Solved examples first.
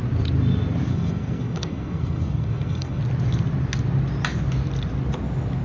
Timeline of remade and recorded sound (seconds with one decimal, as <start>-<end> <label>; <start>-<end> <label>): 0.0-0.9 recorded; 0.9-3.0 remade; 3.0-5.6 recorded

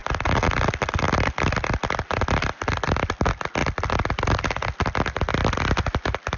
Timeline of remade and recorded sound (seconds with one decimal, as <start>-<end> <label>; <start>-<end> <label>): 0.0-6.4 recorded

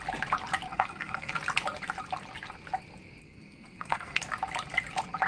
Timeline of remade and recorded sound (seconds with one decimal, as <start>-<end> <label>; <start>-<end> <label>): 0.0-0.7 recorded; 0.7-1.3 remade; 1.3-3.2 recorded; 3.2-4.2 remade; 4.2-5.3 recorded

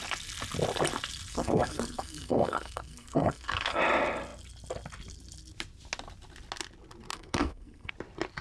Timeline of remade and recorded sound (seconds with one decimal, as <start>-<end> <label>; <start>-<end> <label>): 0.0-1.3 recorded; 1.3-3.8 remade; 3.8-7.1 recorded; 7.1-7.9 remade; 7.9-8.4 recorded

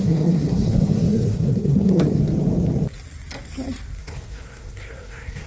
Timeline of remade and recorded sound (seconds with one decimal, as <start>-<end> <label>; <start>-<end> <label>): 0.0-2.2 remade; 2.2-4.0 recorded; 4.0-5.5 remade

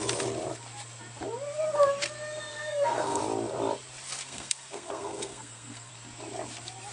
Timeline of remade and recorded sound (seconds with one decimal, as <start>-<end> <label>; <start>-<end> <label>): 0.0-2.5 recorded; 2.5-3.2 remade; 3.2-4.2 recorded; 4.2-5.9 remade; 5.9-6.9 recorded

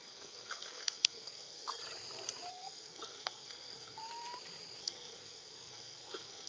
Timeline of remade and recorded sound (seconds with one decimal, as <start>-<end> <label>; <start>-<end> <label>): 0.0-1.8 remade; 1.8-2.5 recorded; 2.5-4.0 remade; 4.0-4.8 recorded; 4.8-6.5 remade